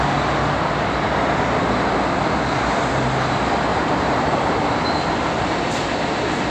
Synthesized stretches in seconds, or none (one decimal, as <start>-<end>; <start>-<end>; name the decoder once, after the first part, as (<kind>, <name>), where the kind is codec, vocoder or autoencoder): 3.7-4.4 (vocoder, BigVGAN v2)